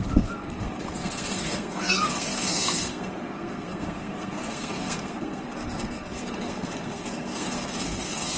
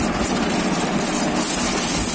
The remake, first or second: first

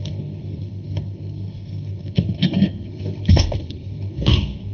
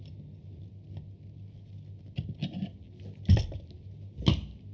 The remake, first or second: first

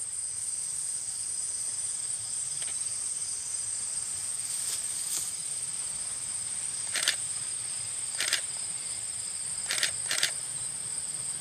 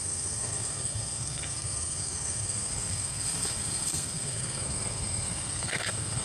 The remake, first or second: second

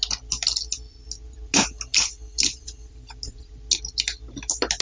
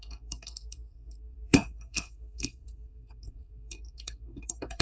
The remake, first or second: second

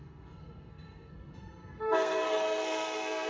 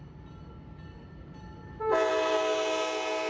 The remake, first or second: first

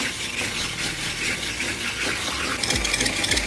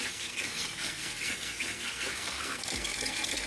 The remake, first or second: second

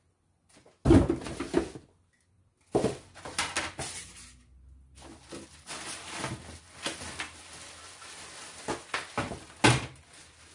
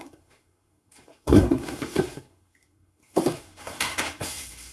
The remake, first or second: second